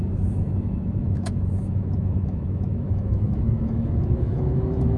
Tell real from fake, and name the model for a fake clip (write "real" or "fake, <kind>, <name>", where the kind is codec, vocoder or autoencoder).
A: fake, autoencoder, DAC-VAE